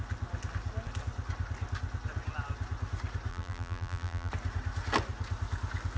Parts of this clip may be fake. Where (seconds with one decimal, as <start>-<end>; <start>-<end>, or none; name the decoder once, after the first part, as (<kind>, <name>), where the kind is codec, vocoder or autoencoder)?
3.3-4.3 (vocoder, BigVGAN v2)